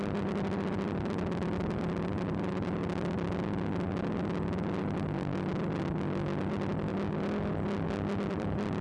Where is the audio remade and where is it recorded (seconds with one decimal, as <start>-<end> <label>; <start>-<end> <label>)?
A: 0.0-2.8 remade; 2.8-4.8 recorded; 4.8-5.5 remade; 5.5-6.5 recorded; 6.5-6.9 remade; 6.9-8.3 recorded; 8.3-8.8 remade